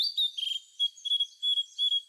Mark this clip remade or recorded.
recorded